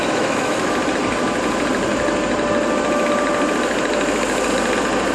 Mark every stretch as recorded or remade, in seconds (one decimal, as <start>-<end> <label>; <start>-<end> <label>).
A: 0.0-0.8 remade; 0.8-5.1 recorded

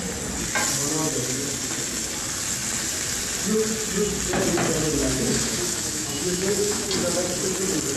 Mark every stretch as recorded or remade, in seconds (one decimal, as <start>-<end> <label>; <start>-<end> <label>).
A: 0.0-5.0 recorded; 5.0-6.9 remade; 6.9-8.0 recorded

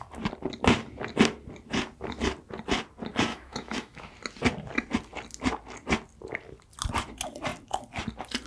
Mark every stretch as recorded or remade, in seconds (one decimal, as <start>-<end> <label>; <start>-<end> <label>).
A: 0.0-3.3 recorded; 3.3-4.1 remade; 4.1-8.5 recorded

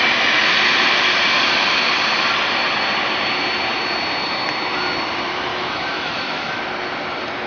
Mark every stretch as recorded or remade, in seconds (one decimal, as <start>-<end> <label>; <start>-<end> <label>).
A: 0.0-5.5 recorded; 5.5-6.6 remade; 6.6-7.5 recorded

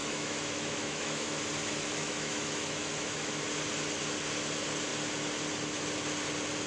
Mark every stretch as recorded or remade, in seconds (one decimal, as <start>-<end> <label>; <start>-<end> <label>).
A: 0.0-1.4 remade; 1.4-2.0 recorded; 2.0-3.4 remade; 3.4-6.7 recorded

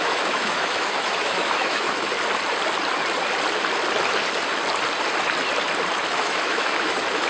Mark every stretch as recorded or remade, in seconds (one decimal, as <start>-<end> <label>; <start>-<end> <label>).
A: 0.0-2.1 remade; 2.1-6.1 recorded; 6.1-7.3 remade

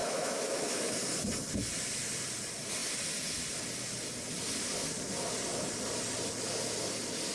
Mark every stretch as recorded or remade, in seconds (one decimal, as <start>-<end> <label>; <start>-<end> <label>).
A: 0.0-1.0 remade; 1.0-7.3 recorded

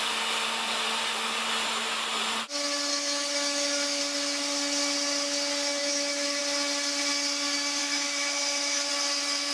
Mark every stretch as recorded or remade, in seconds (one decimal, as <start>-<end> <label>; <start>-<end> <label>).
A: 0.0-2.9 recorded; 2.9-4.0 remade; 4.0-5.8 recorded; 5.8-6.4 remade; 6.4-7.8 recorded; 7.8-8.9 remade; 8.9-9.5 recorded